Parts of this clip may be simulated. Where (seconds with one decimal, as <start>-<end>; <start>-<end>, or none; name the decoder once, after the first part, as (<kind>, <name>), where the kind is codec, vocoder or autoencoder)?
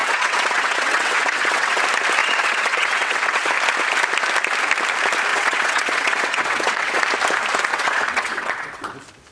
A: 0.0-1.8 (vocoder, WaveNeXt); 2.2-3.5; 5.3-7.0; 7.7-8.9